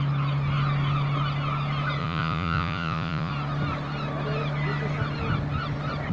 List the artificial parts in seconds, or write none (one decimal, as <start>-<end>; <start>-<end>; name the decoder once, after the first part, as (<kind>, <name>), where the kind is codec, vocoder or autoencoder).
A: 2.0-3.3 (vocoder, Vocos)